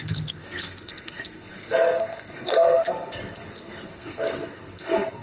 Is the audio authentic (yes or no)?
no